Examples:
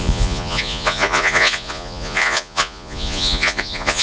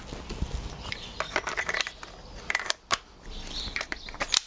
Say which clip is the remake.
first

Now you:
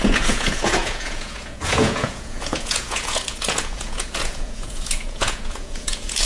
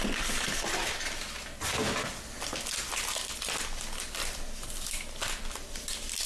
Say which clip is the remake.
first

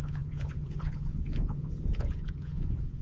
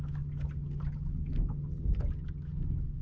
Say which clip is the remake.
first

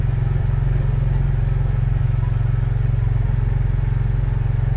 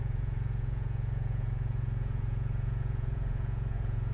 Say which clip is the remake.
second